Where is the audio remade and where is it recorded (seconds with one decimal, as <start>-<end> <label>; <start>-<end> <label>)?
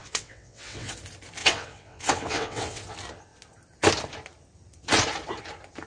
0.0-0.9 remade; 0.9-1.4 recorded; 1.4-2.8 remade; 2.8-5.9 recorded